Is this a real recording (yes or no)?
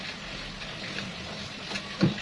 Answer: yes